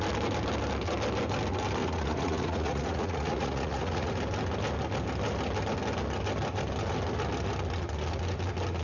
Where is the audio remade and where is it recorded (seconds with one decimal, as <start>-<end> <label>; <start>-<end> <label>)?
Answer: 0.0-1.8 recorded; 1.8-4.1 remade; 4.1-8.8 recorded